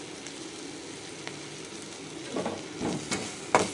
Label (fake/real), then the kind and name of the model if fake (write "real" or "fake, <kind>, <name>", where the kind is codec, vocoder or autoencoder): real